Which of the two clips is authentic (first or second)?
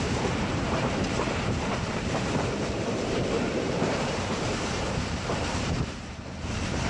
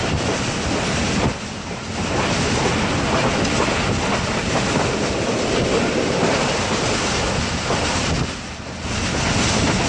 second